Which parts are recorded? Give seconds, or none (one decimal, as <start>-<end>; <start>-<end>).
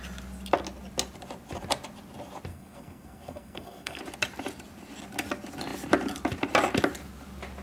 0.0-2.5; 4.0-7.6